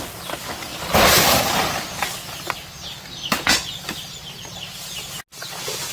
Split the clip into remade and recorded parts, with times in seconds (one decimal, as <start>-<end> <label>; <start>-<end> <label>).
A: 0.0-0.7 recorded; 0.7-4.2 remade; 4.2-5.9 recorded